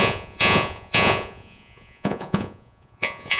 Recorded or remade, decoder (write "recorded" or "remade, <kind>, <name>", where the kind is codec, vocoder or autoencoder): remade, vocoder, Vocos